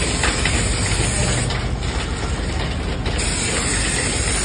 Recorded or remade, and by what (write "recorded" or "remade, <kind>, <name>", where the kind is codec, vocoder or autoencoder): recorded